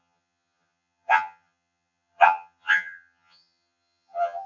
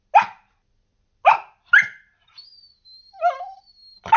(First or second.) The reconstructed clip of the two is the first